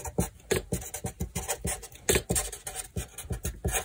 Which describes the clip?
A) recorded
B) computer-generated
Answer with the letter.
A